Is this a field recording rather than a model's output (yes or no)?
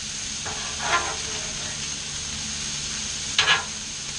yes